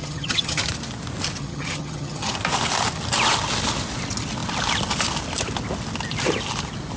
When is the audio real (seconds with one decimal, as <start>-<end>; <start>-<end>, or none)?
0.6-1.4; 2.3-7.0

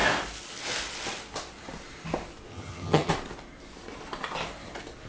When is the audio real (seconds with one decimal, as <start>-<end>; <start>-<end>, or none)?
0.0-2.5; 3.1-5.1

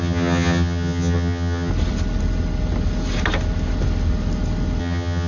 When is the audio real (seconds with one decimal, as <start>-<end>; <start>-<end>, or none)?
1.7-4.8

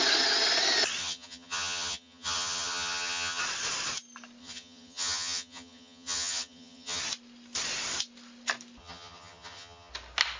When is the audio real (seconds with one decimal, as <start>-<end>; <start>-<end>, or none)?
0.0-1.0; 3.4-4.4; 7.0-8.8; 9.9-10.4

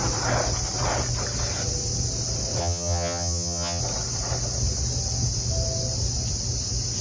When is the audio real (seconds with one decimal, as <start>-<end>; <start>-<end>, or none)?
0.0-2.6; 3.8-7.0

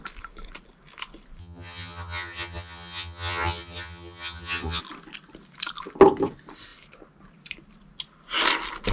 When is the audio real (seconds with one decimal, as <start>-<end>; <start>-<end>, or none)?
0.0-1.4; 4.8-8.9